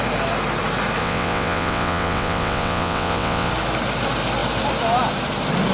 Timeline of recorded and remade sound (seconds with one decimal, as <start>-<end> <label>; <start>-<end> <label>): 0.0-1.0 recorded; 1.0-3.5 remade; 3.5-5.7 recorded